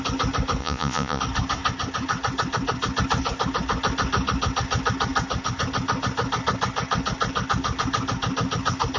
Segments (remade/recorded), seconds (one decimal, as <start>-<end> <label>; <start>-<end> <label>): 0.0-0.6 recorded; 0.6-1.2 remade; 1.2-9.0 recorded